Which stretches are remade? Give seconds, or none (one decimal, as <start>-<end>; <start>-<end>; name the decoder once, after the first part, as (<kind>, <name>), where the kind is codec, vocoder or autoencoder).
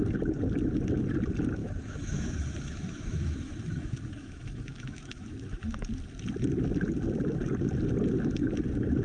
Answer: 1.6-5.9 (autoencoder, DAC-VAE)